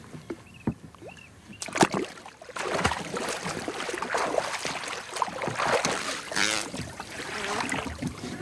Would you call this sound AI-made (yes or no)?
no